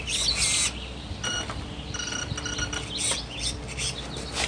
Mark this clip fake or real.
real